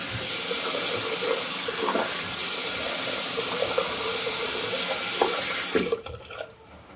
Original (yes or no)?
yes